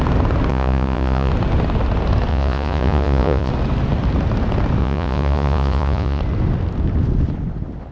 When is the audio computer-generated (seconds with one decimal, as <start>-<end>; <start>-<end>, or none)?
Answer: 0.5-1.3; 2.3-3.5; 4.8-6.2